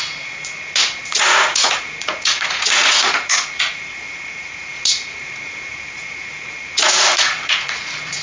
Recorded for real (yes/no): no